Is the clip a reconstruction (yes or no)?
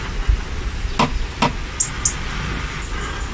no